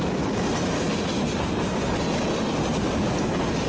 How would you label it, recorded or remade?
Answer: recorded